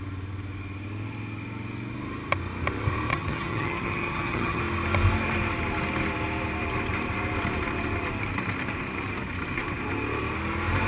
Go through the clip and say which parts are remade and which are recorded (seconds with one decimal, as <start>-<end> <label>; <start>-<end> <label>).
0.0-3.1 recorded; 3.1-4.6 remade; 4.6-10.9 recorded